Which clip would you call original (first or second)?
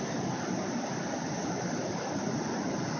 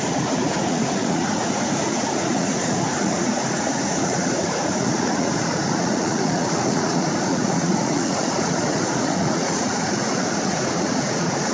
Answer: first